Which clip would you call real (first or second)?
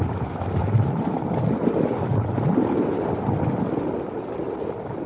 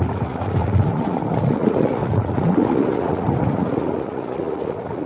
first